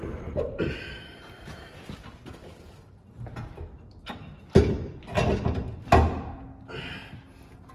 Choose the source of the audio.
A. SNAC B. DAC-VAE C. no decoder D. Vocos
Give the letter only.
C